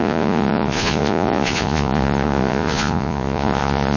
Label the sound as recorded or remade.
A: remade